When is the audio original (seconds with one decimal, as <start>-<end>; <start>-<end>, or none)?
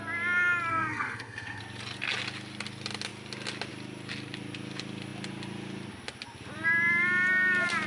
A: 0.0-0.7; 1.6-7.9